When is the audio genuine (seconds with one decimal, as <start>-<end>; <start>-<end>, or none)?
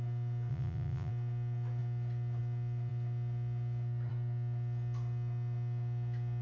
0.0-0.5; 1.1-6.4